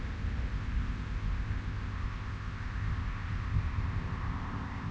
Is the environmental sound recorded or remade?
remade